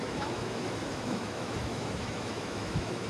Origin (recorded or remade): remade